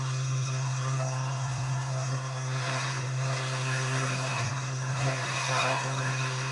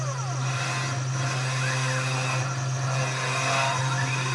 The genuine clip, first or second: second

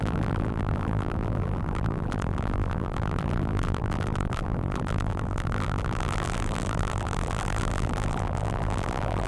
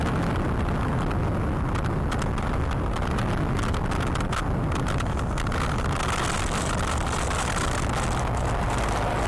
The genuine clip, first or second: second